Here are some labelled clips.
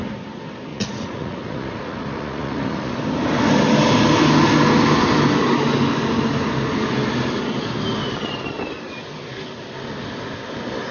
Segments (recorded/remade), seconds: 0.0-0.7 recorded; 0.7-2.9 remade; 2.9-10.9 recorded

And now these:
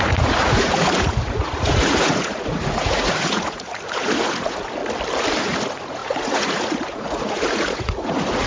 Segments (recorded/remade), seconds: 0.0-4.8 remade; 4.8-5.4 recorded; 5.4-8.5 remade